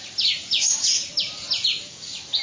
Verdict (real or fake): real